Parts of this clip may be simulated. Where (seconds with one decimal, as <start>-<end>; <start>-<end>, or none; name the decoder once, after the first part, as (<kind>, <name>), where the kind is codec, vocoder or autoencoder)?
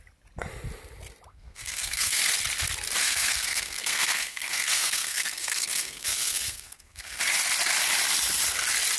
1.3-2.2 (codec, SNAC); 3.0-7.2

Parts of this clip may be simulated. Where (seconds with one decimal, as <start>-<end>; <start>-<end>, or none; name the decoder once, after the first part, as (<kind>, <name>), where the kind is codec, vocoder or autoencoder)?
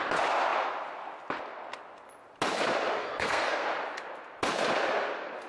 3.0-3.7 (codec, SNAC)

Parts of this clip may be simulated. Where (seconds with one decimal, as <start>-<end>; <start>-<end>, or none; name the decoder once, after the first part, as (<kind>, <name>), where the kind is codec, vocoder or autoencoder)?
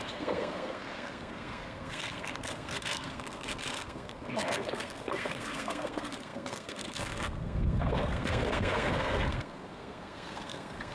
0.0-10.9 (codec, SNAC)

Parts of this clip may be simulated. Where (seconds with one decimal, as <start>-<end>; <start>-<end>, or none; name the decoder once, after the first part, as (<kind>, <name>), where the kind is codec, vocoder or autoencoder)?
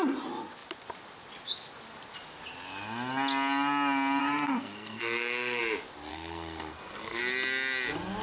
4.2-5.6 (codec, SNAC); 6.1-7.2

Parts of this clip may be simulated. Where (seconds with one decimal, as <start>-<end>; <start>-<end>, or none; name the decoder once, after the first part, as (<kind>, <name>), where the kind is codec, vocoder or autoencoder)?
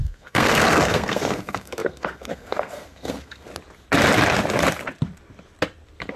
0.0-3.5 (codec, SNAC)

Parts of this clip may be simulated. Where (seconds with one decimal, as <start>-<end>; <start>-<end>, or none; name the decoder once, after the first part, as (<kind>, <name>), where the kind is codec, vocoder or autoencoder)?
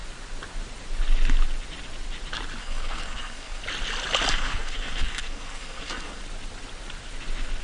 2.6-3.6 (codec, SNAC); 4.3-6.2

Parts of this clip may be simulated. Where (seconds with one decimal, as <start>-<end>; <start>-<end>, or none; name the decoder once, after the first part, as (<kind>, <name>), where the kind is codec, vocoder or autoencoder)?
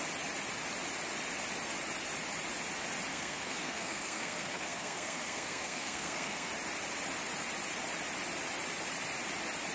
3.1-6.5 (codec, SNAC)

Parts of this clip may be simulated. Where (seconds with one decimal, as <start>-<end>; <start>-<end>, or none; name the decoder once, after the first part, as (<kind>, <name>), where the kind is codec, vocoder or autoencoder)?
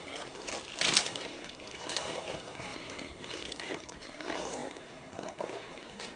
0.0-0.5 (codec, SNAC); 1.0-6.2